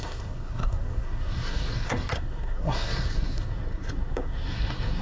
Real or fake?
fake